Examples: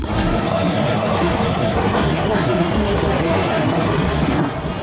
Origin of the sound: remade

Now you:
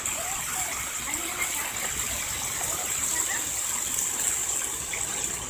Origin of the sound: recorded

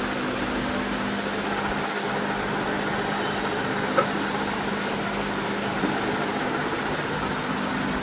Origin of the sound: recorded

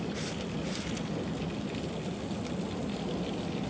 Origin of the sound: recorded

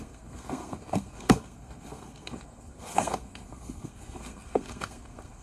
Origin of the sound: remade